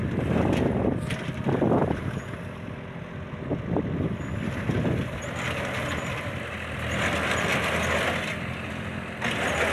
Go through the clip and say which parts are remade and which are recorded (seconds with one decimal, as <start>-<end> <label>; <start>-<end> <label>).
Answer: 0.0-9.7 recorded